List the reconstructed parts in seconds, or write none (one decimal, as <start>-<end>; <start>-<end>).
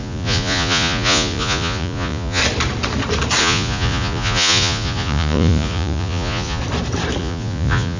0.0-2.4; 3.4-6.6; 7.2-8.0